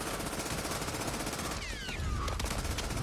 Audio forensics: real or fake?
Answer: real